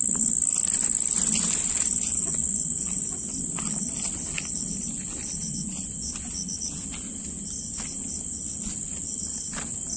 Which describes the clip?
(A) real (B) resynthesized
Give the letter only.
A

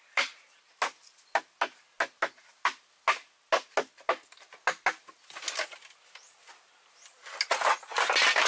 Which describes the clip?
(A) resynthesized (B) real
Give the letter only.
B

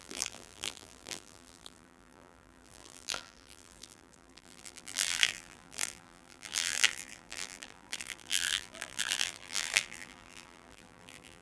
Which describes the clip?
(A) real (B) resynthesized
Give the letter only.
B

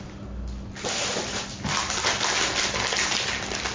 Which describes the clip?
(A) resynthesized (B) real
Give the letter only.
B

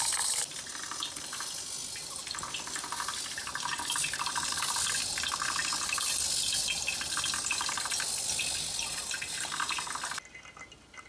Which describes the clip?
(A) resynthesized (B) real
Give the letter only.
B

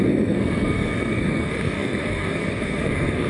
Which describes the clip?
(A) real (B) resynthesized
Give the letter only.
B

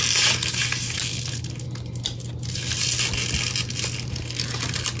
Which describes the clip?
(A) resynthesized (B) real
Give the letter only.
B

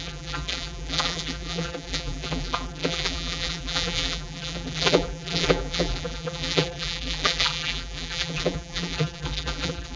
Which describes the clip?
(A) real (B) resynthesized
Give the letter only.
B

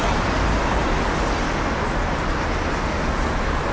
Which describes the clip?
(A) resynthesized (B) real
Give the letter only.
B